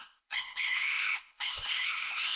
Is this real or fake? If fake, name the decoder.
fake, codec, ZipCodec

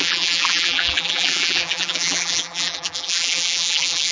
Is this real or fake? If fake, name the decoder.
fake, vocoder, BigVGAN v2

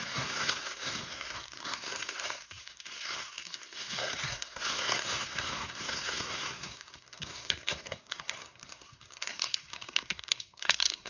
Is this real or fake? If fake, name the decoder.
fake, codec, SNAC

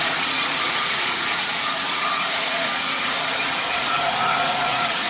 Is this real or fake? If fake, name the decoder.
fake, vocoder, Vocos